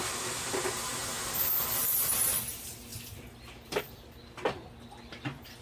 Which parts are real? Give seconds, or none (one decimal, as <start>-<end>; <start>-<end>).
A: 0.0-5.6